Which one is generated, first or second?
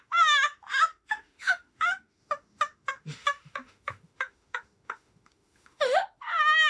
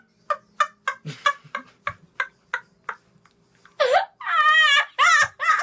first